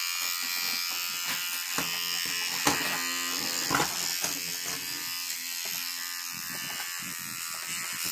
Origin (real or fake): real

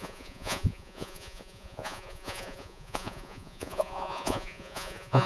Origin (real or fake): fake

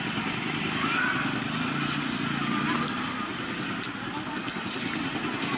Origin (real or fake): real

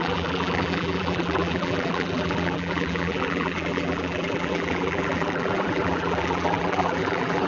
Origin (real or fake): fake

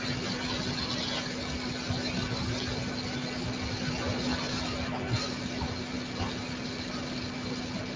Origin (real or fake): real